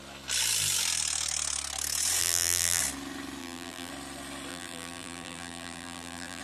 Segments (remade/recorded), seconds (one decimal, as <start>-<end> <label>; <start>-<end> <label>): 0.0-2.2 recorded; 2.2-2.8 remade; 2.8-3.4 recorded; 3.4-3.9 remade; 3.9-4.5 recorded; 4.5-6.4 remade